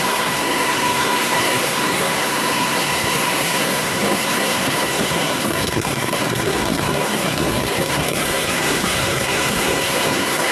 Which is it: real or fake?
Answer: fake